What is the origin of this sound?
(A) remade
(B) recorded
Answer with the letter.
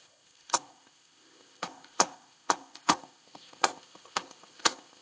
A